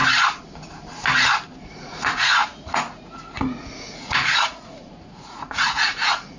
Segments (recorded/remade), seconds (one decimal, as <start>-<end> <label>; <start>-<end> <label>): 0.0-1.6 recorded; 1.6-6.4 remade